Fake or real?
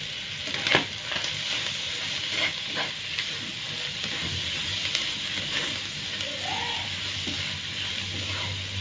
real